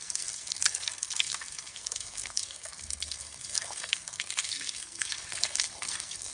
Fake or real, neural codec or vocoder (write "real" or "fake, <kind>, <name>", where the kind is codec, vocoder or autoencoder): fake, codec, SNAC